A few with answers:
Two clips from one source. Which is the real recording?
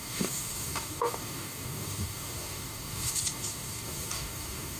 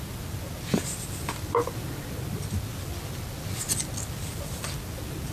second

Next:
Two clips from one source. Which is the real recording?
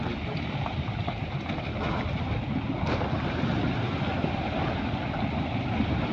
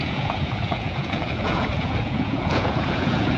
first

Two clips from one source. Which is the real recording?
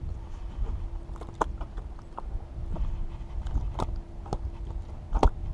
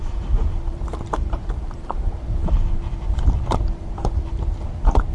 first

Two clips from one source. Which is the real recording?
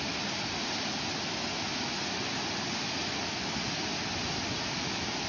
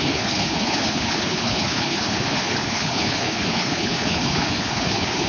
first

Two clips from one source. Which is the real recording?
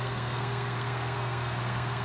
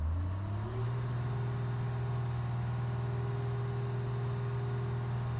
second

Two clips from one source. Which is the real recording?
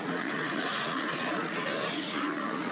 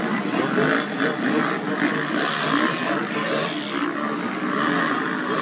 second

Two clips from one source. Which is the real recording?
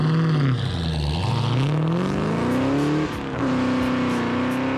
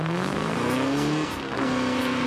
first